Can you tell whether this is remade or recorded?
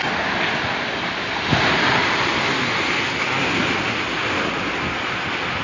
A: recorded